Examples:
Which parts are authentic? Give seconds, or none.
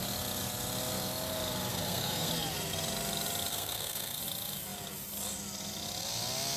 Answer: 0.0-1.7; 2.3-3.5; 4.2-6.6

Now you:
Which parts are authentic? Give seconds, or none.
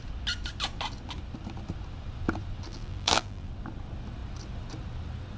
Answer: 0.0-2.7; 3.5-5.4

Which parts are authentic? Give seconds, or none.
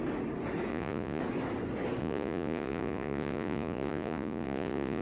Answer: 0.0-0.7; 1.2-2.0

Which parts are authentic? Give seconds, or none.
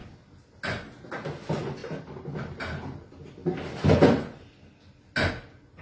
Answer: 0.0-5.8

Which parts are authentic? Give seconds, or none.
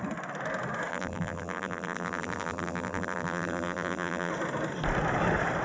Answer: 0.0-0.9; 4.3-5.6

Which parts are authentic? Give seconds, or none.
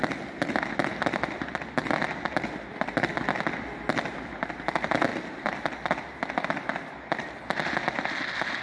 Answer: 0.0-8.6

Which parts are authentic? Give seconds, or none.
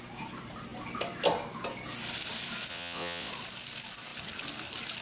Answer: 0.0-2.7; 3.3-5.0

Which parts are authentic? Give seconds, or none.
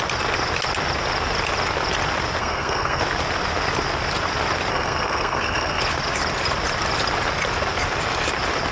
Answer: 0.0-2.4; 3.0-4.7; 5.8-8.7